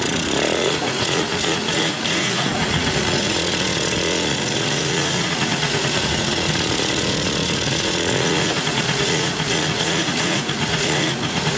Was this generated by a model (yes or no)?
yes